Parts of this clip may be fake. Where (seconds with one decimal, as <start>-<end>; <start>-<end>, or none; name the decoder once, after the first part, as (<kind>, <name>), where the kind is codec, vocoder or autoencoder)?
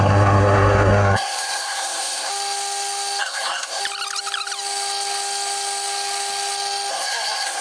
0.0-2.3 (codec, SNAC); 3.2-3.8; 6.9-7.6